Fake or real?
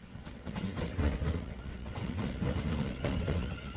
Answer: fake